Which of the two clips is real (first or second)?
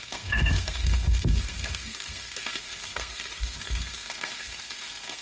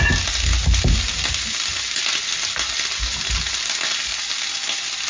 second